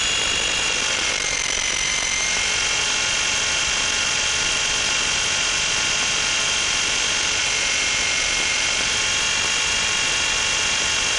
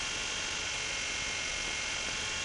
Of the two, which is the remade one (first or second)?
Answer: first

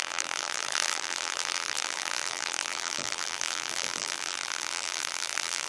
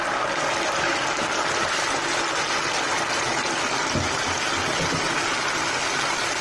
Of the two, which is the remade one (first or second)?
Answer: first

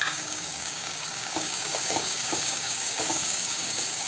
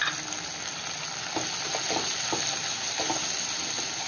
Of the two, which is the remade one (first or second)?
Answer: first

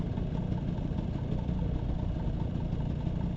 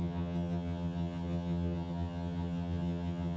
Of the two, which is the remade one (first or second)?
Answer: second